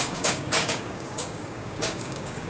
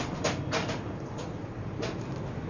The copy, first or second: first